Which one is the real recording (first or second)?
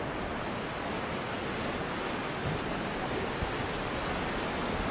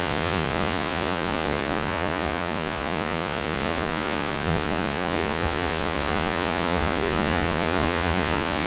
first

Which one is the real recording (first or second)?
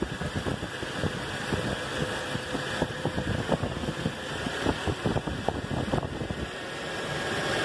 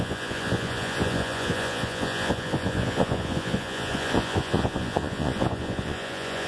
first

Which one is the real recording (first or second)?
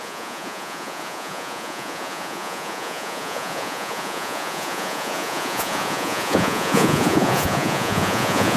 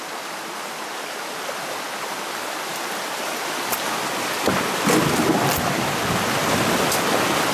second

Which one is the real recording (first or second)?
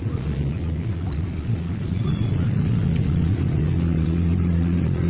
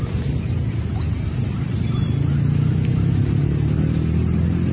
second